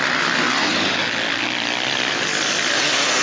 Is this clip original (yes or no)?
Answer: yes